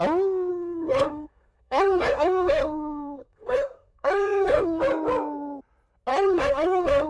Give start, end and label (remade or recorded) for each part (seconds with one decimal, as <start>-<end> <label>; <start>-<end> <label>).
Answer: 0.0-0.5 recorded; 0.5-4.8 remade; 4.8-6.1 recorded; 6.1-7.1 remade